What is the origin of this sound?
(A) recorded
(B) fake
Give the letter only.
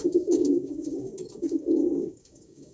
B